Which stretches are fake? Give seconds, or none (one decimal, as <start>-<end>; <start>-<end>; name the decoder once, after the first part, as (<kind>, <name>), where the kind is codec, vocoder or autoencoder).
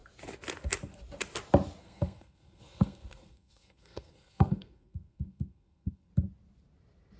1.8-6.1 (codec, SNAC)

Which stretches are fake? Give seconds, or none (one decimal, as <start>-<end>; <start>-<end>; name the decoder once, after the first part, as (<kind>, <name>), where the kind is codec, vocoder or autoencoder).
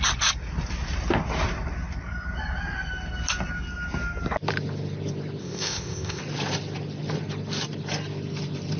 5.4-6.2 (codec, ZipCodec)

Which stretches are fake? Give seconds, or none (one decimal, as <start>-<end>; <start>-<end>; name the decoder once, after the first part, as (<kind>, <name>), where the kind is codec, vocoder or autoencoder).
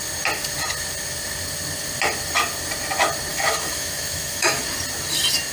3.3-4.6 (autoencoder, DAC-VAE)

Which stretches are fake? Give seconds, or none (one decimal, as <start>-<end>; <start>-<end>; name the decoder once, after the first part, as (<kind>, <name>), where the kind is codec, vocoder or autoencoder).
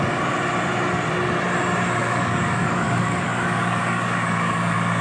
2.0-5.0 (codec, DAC)